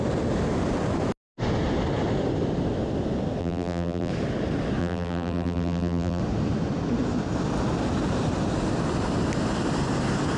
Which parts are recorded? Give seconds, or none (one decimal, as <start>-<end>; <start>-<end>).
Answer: 0.0-3.4; 4.1-4.8; 6.2-10.4